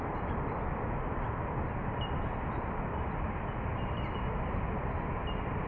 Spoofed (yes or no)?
no